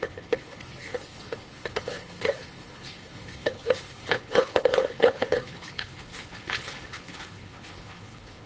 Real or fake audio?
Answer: fake